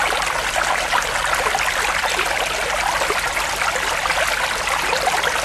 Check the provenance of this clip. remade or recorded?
recorded